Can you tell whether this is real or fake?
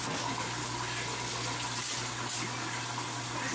real